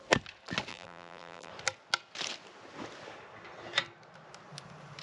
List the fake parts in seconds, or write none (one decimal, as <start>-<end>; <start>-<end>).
0.7-1.5